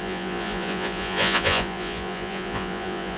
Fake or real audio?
fake